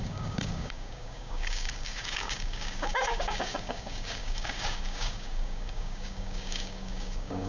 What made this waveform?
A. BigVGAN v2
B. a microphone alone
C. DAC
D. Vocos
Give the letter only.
C